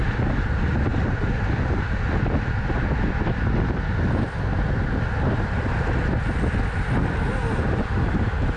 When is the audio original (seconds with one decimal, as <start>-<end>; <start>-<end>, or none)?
0.0-8.6